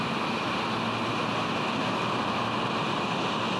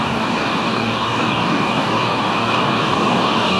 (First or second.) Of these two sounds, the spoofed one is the second